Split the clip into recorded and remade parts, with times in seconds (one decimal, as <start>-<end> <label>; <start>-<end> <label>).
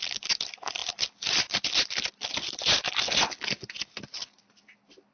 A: 0.0-5.1 recorded